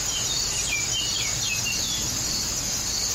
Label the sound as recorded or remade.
recorded